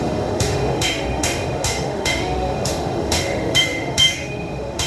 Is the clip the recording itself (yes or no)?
no